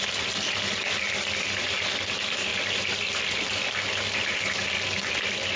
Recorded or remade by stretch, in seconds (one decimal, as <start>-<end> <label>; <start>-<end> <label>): 0.0-5.6 recorded